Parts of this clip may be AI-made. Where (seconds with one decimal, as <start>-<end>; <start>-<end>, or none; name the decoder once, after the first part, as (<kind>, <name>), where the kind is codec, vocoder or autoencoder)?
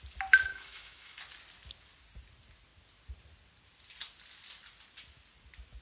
0.5-1.2 (autoencoder, DAC-VAE)